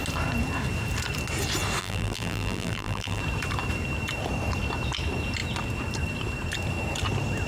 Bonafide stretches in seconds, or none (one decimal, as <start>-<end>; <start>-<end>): 0.0-1.8; 3.2-7.5